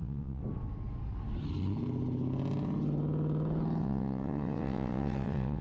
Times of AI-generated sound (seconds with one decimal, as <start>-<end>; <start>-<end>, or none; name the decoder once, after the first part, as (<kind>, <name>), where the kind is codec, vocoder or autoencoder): 0.0-0.4 (vocoder, WaveNeXt); 3.8-5.6